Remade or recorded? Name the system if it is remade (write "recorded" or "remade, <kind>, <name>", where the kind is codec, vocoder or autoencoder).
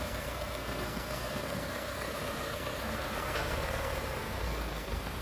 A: remade, codec, SNAC